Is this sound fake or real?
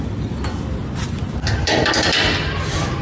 real